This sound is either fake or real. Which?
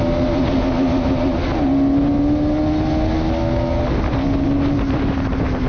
real